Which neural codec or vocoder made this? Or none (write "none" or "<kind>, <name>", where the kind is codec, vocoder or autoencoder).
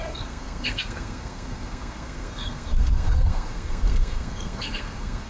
codec, SNAC